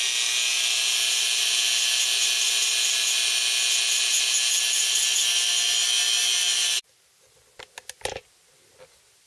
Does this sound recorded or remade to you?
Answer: recorded